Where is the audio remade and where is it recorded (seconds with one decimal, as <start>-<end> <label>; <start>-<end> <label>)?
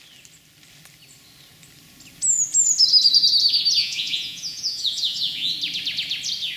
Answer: 0.0-3.8 recorded; 3.8-5.5 remade; 5.5-6.6 recorded